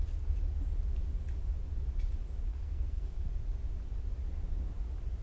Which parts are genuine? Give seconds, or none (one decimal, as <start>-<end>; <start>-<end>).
0.0-2.5; 3.3-5.2